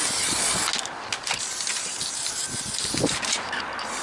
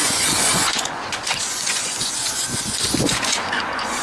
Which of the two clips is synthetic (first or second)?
second